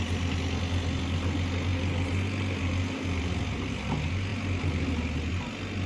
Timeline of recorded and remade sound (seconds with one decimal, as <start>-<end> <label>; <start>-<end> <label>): 0.0-5.9 recorded